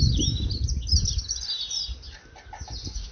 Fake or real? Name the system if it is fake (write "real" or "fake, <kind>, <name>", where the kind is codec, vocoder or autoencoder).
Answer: real